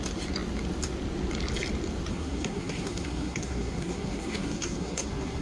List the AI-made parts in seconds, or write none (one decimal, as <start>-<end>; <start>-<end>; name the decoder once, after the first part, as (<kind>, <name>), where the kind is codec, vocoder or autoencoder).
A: 2.1-5.4 (codec, SNAC)